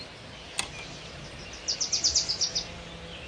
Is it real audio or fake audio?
real